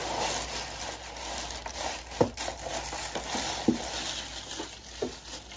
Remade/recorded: recorded